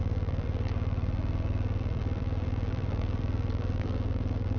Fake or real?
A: fake